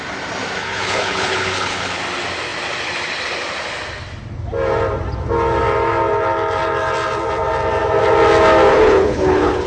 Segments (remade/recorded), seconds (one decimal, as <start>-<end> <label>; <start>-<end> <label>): 0.0-0.6 recorded; 0.6-2.0 remade; 2.0-8.7 recorded; 8.7-9.7 remade